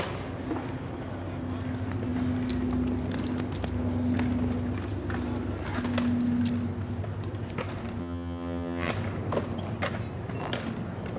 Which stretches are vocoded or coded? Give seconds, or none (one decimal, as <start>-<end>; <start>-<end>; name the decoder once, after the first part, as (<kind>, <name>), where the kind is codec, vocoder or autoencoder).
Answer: 8.0-8.9 (vocoder, HiFi-GAN)